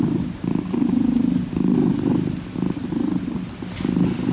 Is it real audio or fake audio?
real